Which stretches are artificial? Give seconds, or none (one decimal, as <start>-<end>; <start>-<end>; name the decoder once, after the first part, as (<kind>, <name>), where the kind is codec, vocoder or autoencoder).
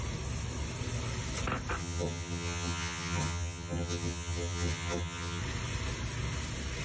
1.8-5.4 (vocoder, HiFi-GAN)